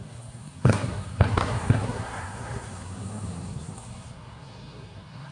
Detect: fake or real fake